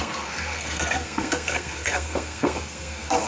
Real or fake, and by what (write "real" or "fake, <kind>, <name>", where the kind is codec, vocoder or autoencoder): fake, codec, SNAC